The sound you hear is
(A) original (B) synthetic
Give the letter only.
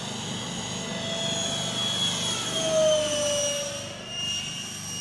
A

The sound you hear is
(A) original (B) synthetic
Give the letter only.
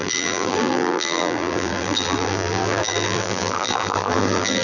B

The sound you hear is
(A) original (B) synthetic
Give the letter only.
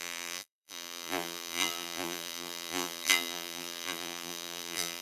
B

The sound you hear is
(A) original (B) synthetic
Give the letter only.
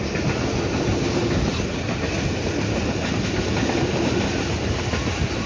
A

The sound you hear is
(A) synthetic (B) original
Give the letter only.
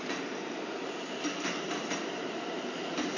A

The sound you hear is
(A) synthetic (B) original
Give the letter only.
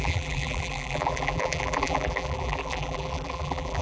A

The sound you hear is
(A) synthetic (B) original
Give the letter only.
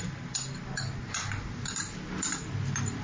B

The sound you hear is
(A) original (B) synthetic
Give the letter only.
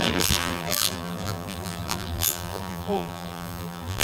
B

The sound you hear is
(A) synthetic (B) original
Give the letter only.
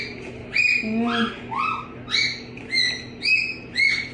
B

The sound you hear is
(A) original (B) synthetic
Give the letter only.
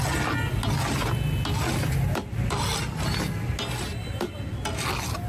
A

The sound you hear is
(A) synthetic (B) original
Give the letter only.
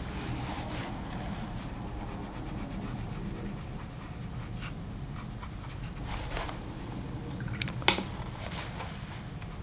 B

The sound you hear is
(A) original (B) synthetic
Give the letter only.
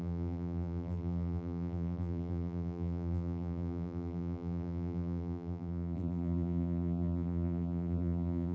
B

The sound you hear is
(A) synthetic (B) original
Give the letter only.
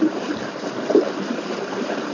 A